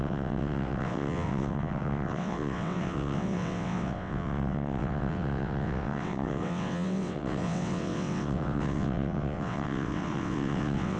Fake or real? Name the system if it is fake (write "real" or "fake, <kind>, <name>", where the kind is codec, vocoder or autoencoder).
fake, vocoder, WaveNeXt